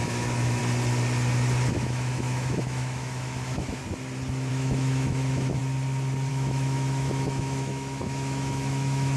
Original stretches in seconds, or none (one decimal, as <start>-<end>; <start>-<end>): 0.6-1.7; 3.8-4.5; 5.6-6.3

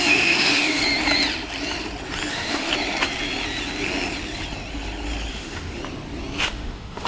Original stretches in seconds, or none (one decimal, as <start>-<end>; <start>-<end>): 0.8-2.3; 2.7-5.3; 5.8-6.4

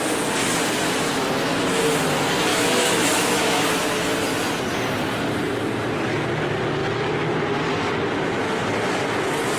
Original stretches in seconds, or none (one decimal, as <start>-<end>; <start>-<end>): 0.0-2.5; 3.7-9.6

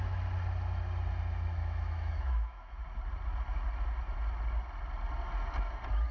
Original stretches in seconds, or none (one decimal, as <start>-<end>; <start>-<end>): 0.0-1.6; 2.8-6.1

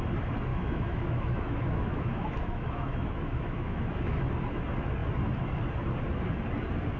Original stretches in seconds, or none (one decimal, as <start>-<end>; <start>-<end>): 0.0-0.5; 4.3-7.0